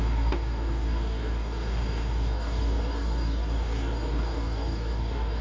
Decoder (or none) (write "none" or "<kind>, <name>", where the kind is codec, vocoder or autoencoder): codec, DAC